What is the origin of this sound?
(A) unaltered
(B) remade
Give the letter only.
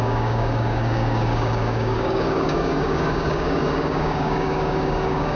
B